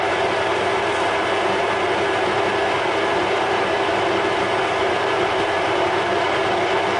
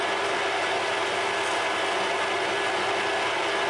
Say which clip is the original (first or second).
second